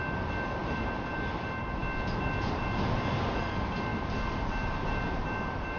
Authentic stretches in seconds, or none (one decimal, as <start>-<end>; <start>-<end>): 0.0-5.8